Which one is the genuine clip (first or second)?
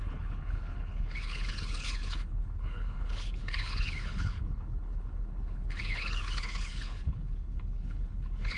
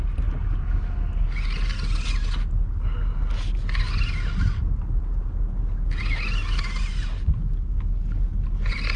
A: second